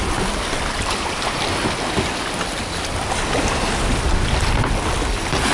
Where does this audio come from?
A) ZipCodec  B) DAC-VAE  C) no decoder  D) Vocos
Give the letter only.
C